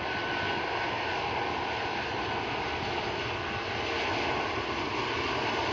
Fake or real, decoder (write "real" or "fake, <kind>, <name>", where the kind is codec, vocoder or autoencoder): real